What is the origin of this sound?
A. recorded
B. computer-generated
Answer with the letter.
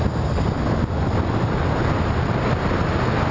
A